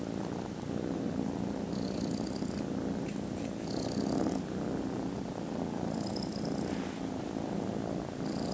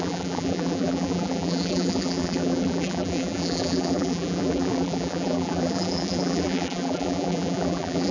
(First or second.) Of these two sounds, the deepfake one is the second